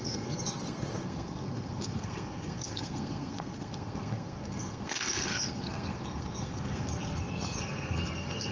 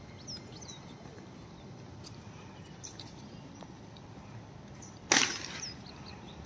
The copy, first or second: first